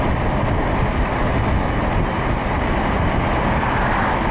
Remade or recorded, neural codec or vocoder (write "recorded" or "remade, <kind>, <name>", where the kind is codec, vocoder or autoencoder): recorded